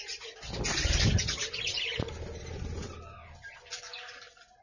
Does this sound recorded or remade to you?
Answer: recorded